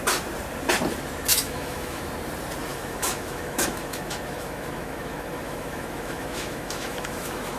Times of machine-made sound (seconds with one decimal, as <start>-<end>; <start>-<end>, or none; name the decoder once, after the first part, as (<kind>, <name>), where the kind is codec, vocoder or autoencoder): 1.3-2.1 (autoencoder, DAC-VAE); 2.7-7.6

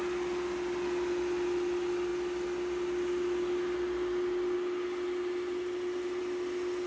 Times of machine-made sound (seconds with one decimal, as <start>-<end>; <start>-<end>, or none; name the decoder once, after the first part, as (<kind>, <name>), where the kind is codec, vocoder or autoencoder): none

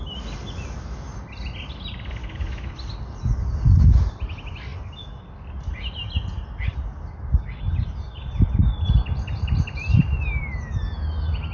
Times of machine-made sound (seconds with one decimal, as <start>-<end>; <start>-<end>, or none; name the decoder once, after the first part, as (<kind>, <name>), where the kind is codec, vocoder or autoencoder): 2.2-2.7 (autoencoder, DAC-VAE)

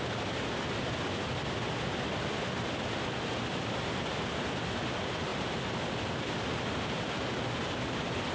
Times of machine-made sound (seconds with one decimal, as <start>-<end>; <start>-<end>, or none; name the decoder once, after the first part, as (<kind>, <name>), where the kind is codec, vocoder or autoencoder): none

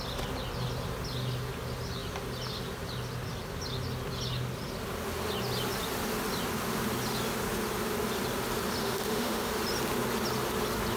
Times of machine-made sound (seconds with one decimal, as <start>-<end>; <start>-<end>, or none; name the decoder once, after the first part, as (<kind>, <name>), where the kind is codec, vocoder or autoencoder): 8.8-9.5 (autoencoder, DAC-VAE)

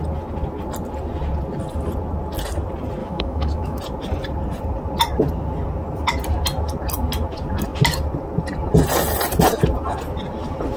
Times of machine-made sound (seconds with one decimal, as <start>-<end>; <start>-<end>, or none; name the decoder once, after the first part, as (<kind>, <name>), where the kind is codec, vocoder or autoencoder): 3.0-3.8 (autoencoder, DAC-VAE)

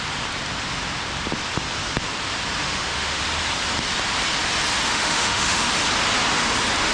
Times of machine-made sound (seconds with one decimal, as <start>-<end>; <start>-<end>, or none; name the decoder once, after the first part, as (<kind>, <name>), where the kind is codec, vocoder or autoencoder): 2.6-3.2 (autoencoder, DAC-VAE); 4.9-5.7

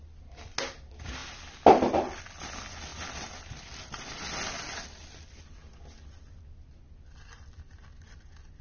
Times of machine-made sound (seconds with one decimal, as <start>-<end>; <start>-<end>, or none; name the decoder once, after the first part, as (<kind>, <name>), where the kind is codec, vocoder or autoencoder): none